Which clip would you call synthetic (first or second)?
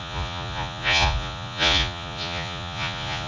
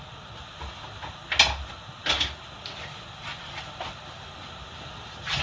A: first